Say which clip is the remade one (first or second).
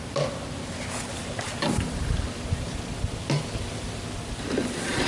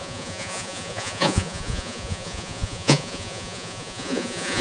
second